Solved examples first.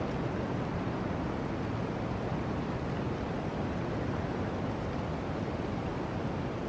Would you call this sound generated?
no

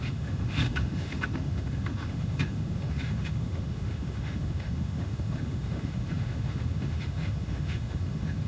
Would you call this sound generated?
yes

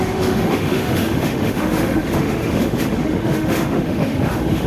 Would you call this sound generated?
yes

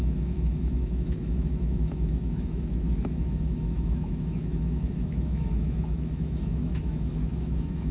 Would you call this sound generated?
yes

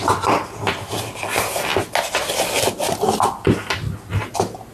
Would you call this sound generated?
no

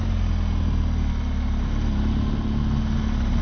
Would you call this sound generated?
no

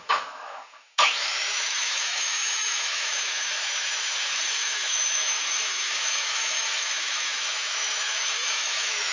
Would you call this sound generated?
yes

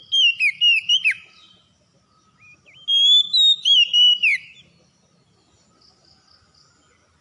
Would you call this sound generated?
no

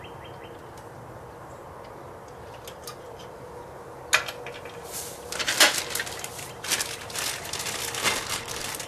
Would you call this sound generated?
no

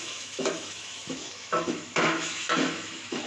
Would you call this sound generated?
yes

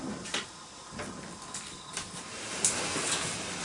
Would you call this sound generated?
no